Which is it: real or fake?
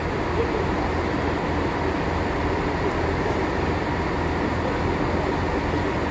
real